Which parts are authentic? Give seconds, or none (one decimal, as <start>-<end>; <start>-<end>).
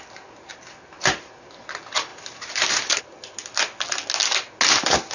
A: 0.0-5.1